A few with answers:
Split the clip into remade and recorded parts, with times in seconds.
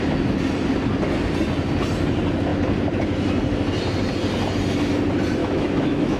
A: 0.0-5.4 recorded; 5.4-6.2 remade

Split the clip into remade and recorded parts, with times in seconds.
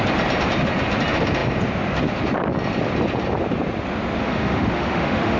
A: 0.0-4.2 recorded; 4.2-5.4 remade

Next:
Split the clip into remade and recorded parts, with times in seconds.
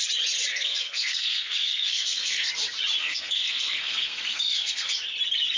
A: 0.0-0.5 recorded; 0.5-2.5 remade; 2.5-3.0 recorded; 3.0-4.9 remade; 4.9-5.6 recorded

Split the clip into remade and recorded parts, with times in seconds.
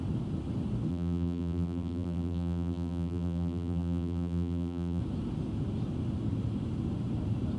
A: 0.0-0.9 recorded; 0.9-5.0 remade; 5.0-7.6 recorded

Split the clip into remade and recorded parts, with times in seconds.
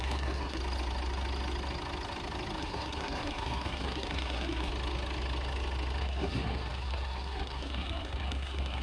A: 0.0-0.6 remade; 0.6-2.6 recorded; 2.6-4.7 remade; 4.7-6.0 recorded; 6.0-8.8 remade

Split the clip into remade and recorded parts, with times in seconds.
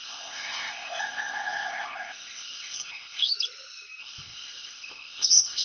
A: 0.0-3.3 remade; 3.3-4.0 recorded; 4.0-5.6 remade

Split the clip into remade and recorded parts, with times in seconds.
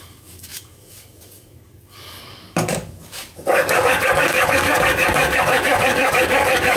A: 0.0-6.8 remade